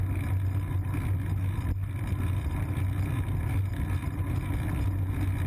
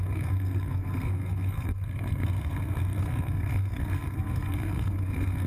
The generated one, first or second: second